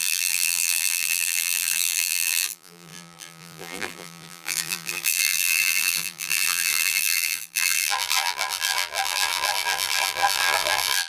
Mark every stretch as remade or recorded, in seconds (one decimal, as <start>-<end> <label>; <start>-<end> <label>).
0.0-11.1 remade